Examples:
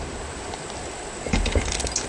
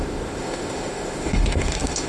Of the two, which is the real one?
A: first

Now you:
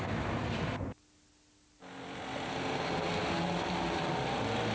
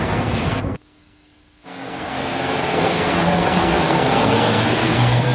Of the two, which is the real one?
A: first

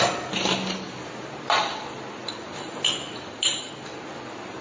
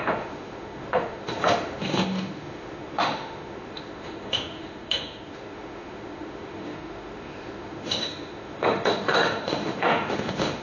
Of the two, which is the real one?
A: first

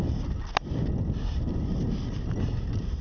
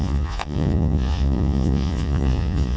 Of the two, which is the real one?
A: first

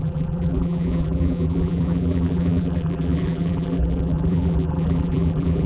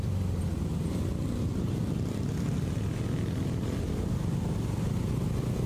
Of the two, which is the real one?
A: second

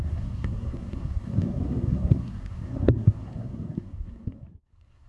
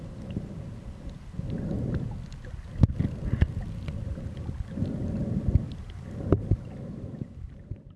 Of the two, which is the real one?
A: second